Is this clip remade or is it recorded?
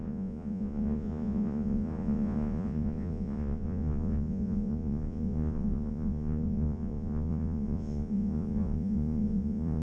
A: remade